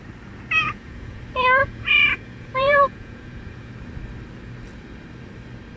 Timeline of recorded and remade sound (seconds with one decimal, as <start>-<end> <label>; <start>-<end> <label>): 0.0-0.6 recorded; 0.6-1.2 remade; 1.2-1.6 recorded; 1.6-3.7 remade; 3.7-5.8 recorded